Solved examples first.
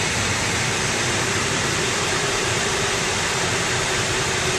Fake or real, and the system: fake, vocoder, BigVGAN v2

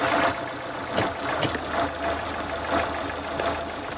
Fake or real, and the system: real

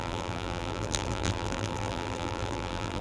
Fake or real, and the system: fake, vocoder, BigVGAN v2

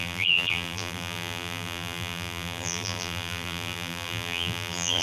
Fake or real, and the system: fake, vocoder, BigVGAN v2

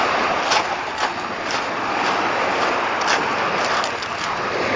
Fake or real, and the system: real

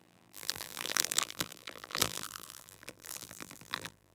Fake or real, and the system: fake, vocoder, BigVGAN v2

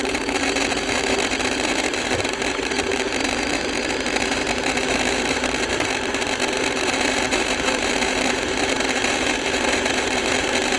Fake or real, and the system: fake, vocoder, BigVGAN v2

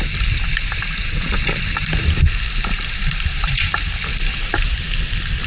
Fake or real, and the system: fake, vocoder, BigVGAN v2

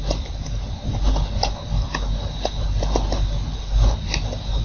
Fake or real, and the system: real